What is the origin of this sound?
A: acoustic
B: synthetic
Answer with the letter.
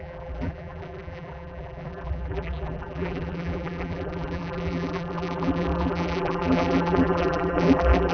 B